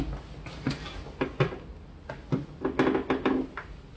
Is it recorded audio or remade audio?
recorded